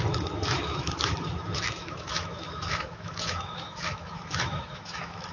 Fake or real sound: fake